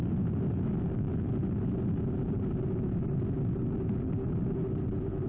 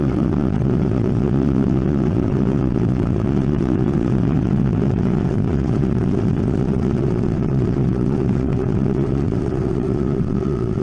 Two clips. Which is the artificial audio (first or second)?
second